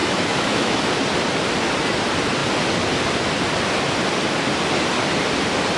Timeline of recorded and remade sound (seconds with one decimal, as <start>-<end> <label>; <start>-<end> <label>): 0.0-0.8 remade; 0.8-5.8 recorded